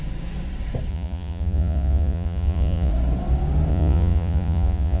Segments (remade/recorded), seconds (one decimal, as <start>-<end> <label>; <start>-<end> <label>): 0.0-0.9 recorded; 0.9-2.9 remade; 2.9-3.7 recorded; 3.7-5.0 remade

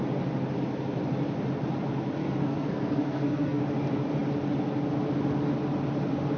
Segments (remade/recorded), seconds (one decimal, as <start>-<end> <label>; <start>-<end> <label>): 0.0-2.2 recorded; 2.2-3.6 remade; 3.6-6.4 recorded

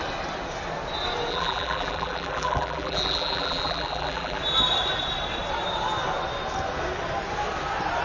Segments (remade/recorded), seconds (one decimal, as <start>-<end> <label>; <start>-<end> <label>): 0.0-1.3 recorded; 1.3-4.4 remade; 4.4-8.0 recorded

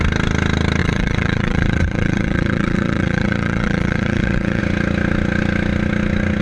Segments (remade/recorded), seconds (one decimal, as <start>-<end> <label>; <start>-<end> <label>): 0.0-0.8 recorded; 0.8-4.6 remade; 4.6-6.4 recorded

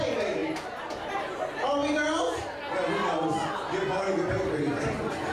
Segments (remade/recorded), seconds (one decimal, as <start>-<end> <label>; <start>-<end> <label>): 0.0-5.3 recorded

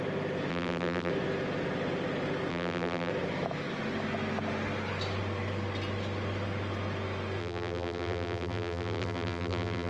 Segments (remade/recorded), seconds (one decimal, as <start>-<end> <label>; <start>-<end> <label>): 0.0-0.5 recorded; 0.5-1.1 remade; 1.1-2.5 recorded; 2.5-3.1 remade; 3.1-7.4 recorded; 7.4-9.9 remade